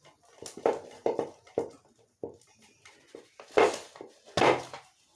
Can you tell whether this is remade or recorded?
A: recorded